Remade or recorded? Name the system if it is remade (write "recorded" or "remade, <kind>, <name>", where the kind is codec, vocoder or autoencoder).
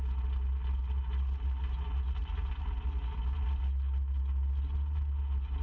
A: recorded